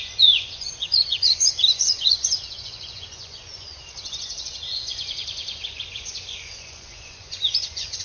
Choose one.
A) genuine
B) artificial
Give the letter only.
B